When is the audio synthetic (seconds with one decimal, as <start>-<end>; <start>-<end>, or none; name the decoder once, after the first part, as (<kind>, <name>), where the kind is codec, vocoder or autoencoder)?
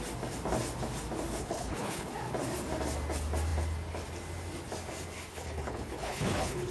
1.4-2.1 (codec, HILCodec); 5.3-6.7